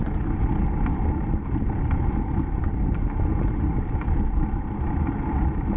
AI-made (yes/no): no